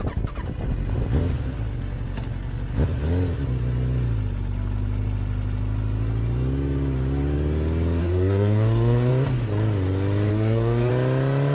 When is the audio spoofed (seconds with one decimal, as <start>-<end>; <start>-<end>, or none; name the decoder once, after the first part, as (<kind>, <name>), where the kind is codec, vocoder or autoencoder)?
8.0-9.1 (codec, SNAC); 10.3-10.9